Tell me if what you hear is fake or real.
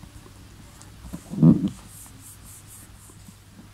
real